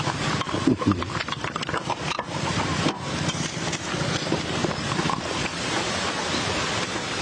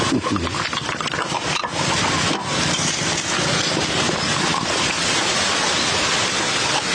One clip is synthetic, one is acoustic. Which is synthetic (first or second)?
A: first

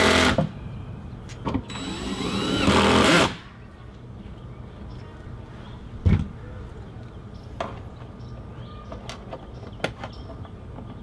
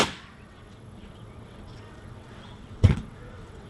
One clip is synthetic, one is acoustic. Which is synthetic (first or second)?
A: second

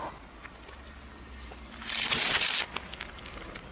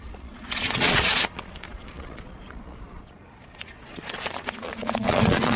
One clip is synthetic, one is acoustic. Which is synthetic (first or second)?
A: second